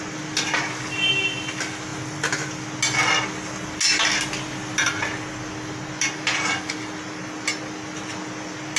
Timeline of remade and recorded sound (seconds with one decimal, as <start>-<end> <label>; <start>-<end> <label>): 0.0-8.8 recorded